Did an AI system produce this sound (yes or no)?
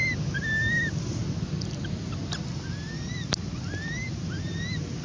no